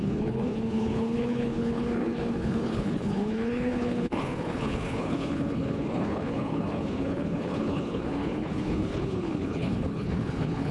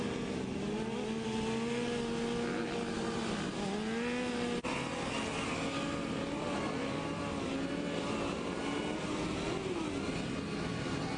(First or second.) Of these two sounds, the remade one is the first